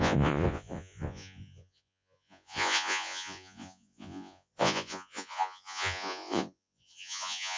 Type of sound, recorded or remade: remade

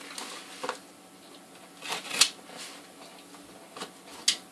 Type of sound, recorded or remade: recorded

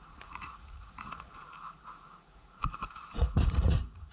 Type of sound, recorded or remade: remade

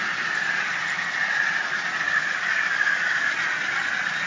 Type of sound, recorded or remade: recorded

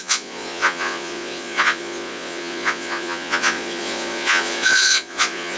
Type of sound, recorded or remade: remade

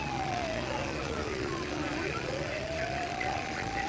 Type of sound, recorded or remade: remade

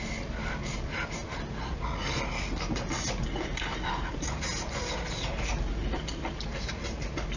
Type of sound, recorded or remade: recorded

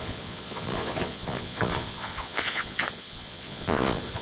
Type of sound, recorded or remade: remade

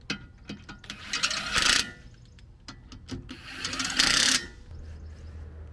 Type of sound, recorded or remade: recorded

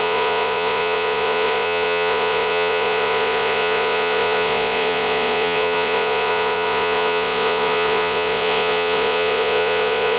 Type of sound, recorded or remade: remade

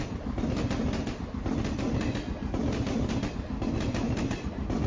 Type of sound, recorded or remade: recorded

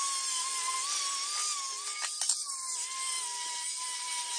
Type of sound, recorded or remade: recorded